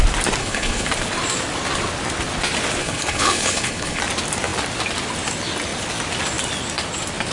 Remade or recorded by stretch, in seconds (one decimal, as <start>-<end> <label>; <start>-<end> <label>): 0.0-0.4 recorded; 0.4-0.9 remade; 0.9-2.8 recorded; 2.8-4.0 remade; 4.0-7.3 recorded